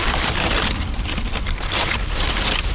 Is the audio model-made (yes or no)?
yes